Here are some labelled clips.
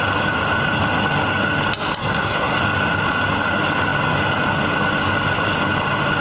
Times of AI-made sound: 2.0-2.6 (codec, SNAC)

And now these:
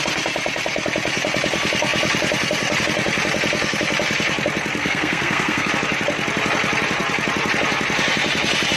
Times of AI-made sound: 4.8-5.7 (codec, SNAC)